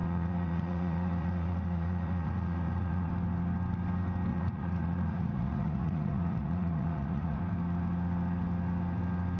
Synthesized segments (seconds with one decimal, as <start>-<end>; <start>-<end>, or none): 0.0-3.1; 4.3-7.4